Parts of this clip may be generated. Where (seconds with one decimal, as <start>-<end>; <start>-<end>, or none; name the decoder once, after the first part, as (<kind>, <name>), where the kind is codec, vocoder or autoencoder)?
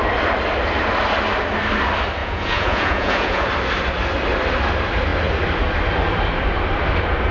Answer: 2.2-3.5 (vocoder, Vocos)